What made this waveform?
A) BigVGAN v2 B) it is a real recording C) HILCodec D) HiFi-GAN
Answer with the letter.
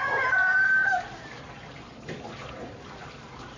A